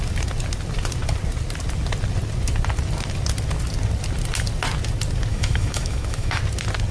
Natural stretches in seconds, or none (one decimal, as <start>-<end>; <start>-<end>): 0.0-5.3; 6.4-6.9

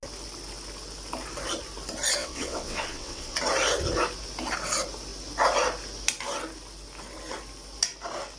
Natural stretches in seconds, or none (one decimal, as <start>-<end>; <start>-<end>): 0.0-2.2; 3.4-8.4

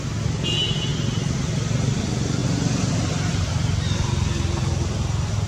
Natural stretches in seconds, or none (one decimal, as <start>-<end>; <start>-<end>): 0.0-2.4; 2.9-3.3; 4.1-5.5